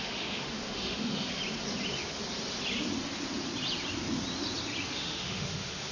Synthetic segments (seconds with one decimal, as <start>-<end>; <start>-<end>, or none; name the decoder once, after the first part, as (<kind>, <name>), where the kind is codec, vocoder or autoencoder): 0.0-1.4 (autoencoder, DAC-VAE); 4.9-5.9

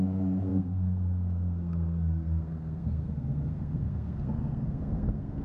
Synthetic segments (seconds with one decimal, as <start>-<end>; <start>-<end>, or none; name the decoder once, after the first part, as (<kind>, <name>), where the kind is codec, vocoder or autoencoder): 0.0-5.4 (codec, SNAC)

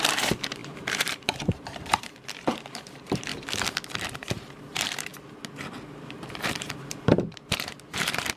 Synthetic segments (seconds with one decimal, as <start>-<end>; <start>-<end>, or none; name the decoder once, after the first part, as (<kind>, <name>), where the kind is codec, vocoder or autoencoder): 0.0-3.3 (vocoder, BigVGAN v2); 4.1-5.1; 5.8-8.4

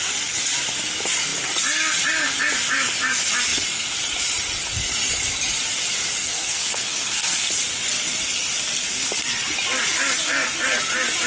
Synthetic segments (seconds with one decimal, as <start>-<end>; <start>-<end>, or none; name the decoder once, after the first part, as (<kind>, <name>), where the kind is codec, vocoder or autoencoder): 6.2-7.5 (codec, SNAC)

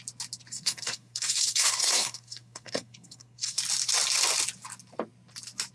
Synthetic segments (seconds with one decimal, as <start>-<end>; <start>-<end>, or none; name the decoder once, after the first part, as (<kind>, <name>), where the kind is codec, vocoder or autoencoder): 0.5-3.6 (codec, SNAC)

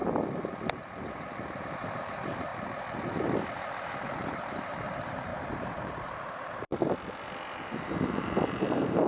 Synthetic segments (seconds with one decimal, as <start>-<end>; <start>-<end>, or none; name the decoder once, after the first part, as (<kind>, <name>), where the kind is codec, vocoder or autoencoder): 1.6-2.5 (vocoder, BigVGAN v2); 4.1-6.7; 7.6-9.1